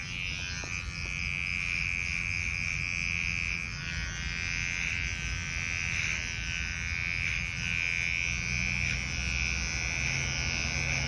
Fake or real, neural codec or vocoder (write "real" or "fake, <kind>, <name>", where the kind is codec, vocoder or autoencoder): real